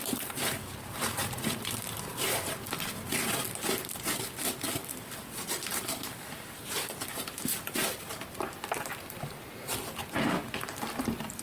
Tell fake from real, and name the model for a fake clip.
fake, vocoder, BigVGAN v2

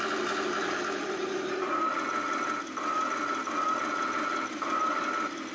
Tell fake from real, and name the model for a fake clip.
real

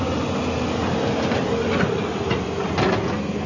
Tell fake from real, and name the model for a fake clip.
real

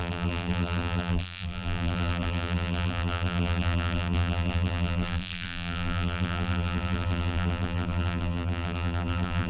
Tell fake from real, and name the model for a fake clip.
fake, vocoder, BigVGAN v2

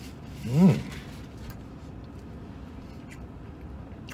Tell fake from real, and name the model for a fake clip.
real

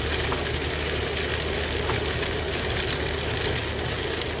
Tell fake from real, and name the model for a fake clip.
real